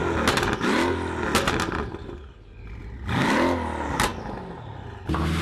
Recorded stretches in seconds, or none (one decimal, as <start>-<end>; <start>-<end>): 0.0-5.4